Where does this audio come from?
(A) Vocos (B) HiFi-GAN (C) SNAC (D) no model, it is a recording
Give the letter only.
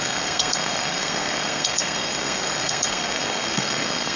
C